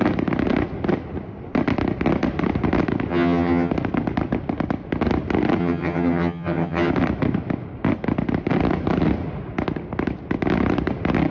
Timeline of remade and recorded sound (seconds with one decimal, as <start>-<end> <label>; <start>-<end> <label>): 0.0-3.1 recorded; 3.1-3.7 remade; 3.7-5.6 recorded; 5.6-6.9 remade; 6.9-11.3 recorded